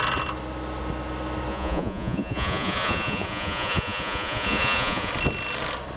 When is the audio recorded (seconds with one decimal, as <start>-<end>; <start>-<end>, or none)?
0.0-1.5; 5.1-6.0